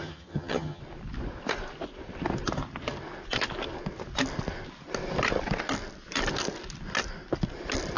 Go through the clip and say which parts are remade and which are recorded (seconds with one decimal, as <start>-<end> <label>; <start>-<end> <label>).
0.0-0.8 remade; 0.8-8.0 recorded